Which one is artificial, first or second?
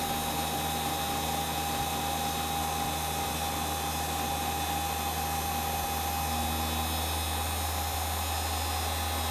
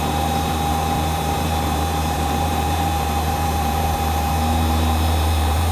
second